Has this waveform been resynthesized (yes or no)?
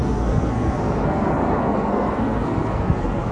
yes